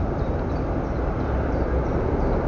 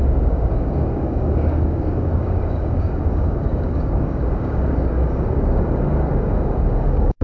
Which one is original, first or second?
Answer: first